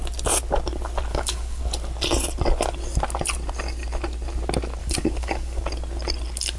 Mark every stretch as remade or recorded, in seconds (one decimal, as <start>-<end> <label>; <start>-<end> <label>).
0.0-1.1 recorded; 1.1-1.6 remade; 1.6-4.8 recorded; 4.8-5.6 remade; 5.6-6.6 recorded